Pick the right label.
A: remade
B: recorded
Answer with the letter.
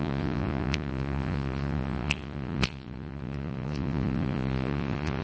A